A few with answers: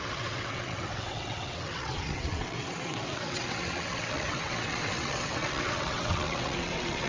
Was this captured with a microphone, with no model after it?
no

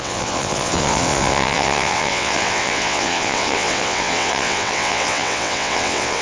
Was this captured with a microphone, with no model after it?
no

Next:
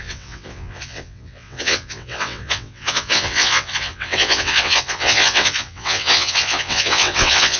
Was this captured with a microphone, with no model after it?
no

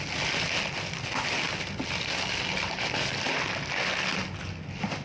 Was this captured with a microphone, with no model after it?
yes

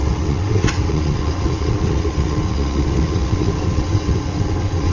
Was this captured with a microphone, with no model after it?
no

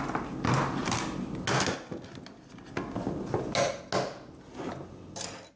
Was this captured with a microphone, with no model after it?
yes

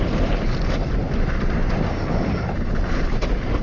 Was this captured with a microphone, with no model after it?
yes